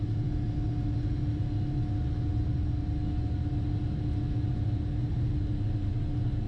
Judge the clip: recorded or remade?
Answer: recorded